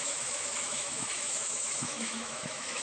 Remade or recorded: remade